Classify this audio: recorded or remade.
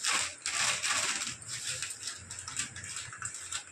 recorded